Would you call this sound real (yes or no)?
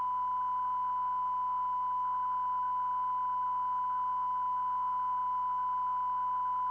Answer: yes